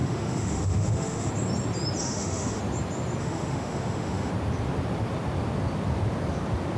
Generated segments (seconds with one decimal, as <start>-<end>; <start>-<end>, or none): 0.0-1.3; 2.0-2.6; 3.2-4.3